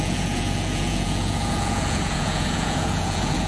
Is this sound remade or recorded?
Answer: remade